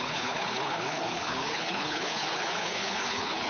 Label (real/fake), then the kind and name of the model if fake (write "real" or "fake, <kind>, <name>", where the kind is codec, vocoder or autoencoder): fake, codec, HILCodec